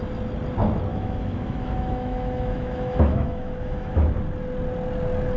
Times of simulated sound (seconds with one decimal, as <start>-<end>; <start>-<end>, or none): 0.9-4.1